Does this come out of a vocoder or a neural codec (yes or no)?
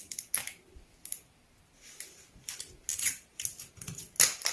no